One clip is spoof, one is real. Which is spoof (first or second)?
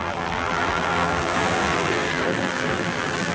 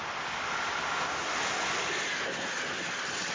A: first